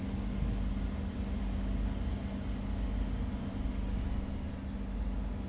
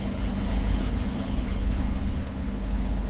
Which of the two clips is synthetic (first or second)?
second